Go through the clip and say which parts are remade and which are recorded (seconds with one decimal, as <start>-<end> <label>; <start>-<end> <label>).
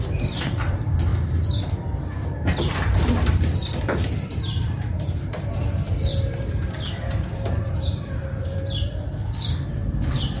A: 0.0-1.1 remade; 1.1-2.1 recorded; 2.1-6.1 remade; 6.1-8.5 recorded; 8.5-10.4 remade